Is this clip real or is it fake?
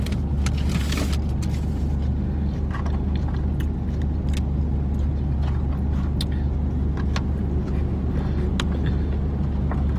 real